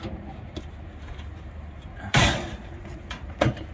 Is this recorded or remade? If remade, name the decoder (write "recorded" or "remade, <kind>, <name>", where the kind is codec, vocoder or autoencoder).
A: remade, vocoder, BigVGAN v2